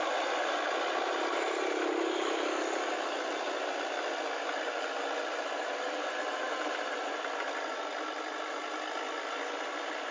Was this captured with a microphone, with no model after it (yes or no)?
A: yes